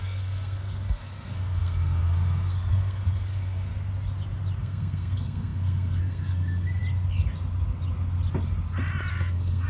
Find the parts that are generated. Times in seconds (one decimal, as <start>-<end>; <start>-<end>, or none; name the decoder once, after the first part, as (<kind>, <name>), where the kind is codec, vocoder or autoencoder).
0.0-3.7 (codec, SNAC); 4.6-6.8; 9.1-9.7